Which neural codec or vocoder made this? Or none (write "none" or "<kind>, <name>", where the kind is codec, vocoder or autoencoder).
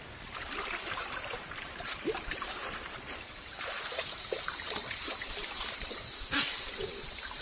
vocoder, BigVGAN v2